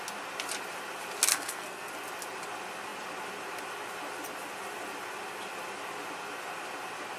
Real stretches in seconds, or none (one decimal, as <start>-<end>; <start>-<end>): 0.0-1.3; 1.9-7.2